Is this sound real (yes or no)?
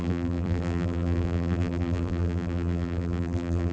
no